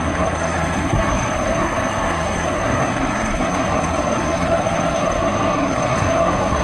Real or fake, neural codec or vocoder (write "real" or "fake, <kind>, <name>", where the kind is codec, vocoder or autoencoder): fake, codec, SNAC